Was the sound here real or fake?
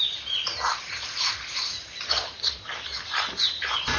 real